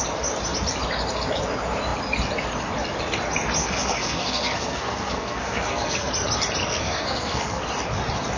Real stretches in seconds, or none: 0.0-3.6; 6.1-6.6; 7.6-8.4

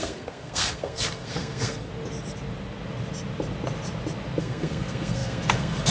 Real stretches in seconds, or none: 1.9-4.4

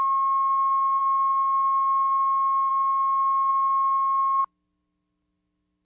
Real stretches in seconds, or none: 0.0-5.8

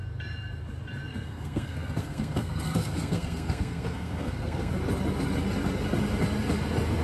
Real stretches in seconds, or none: 0.0-1.1; 4.7-7.0